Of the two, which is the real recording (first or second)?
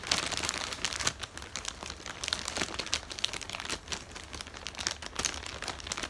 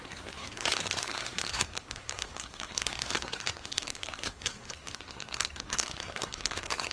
first